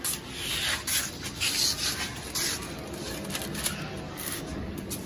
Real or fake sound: real